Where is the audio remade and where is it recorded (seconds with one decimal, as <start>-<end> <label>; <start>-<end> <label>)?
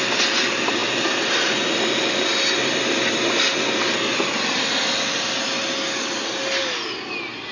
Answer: 0.0-7.5 recorded